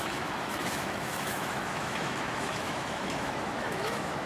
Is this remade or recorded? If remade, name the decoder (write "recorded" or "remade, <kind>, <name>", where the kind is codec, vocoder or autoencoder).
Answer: remade, autoencoder, DAC-VAE